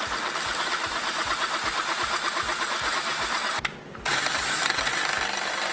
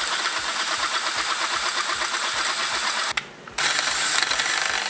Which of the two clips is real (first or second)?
second